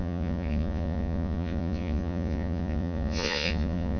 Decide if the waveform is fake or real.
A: fake